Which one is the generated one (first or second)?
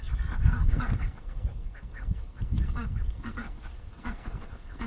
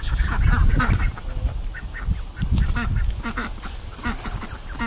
first